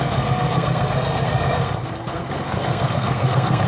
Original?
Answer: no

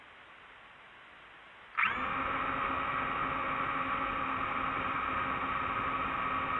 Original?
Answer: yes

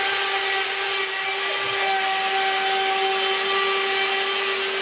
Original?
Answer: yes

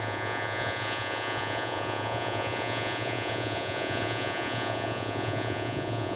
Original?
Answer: no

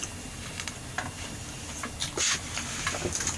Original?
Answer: yes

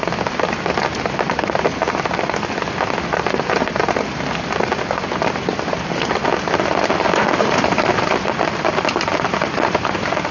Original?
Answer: yes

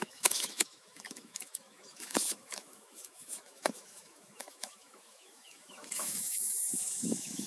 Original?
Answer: no